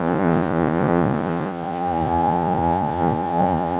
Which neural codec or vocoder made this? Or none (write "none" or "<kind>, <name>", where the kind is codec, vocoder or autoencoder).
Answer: vocoder, Vocos